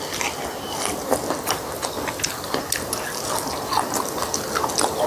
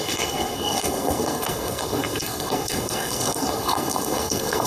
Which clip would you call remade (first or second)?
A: second